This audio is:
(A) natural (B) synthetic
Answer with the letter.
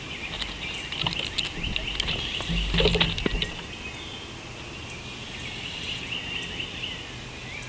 A